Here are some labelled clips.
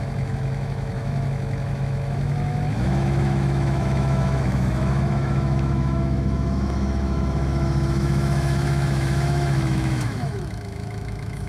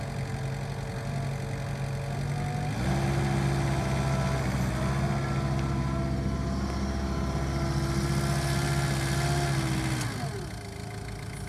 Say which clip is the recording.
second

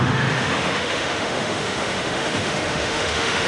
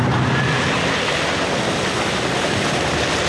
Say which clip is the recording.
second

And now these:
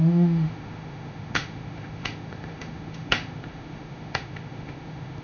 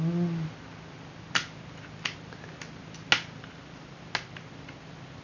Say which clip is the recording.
second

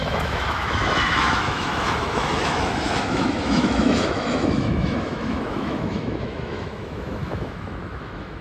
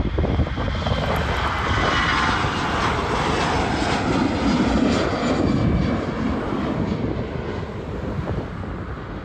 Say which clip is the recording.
second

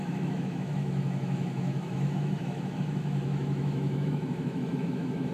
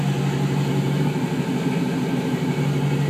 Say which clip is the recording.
second